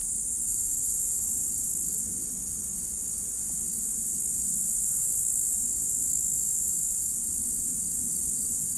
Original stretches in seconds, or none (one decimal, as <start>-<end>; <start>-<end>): 0.7-1.4; 2.6-8.8